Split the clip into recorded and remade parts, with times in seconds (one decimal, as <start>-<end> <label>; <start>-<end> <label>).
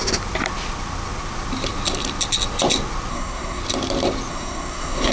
0.0-3.1 recorded; 3.1-3.6 remade; 3.6-4.3 recorded; 4.3-5.1 remade